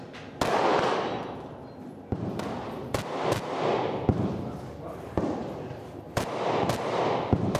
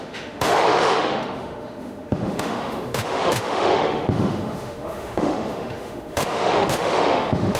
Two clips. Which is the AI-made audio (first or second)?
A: second